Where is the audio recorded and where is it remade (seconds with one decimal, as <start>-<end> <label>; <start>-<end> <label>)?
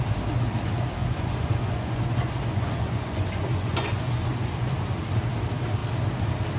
0.0-1.0 recorded; 1.0-5.0 remade; 5.0-6.6 recorded